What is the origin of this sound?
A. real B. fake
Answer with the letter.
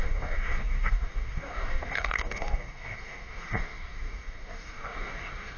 B